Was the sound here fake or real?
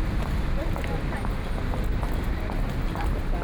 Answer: real